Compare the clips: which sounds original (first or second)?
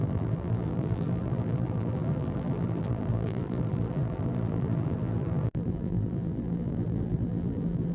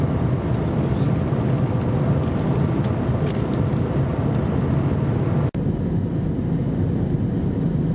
second